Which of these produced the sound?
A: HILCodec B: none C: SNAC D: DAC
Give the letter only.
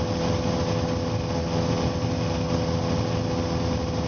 B